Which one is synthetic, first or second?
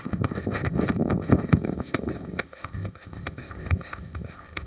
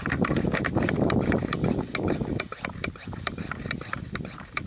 first